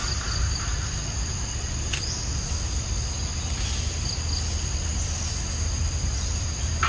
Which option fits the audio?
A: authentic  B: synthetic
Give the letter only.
A